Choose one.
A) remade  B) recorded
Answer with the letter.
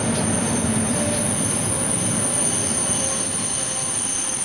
B